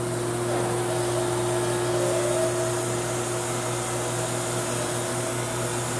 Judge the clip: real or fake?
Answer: real